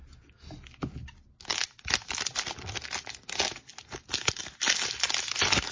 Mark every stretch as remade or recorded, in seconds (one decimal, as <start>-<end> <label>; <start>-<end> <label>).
0.0-5.7 recorded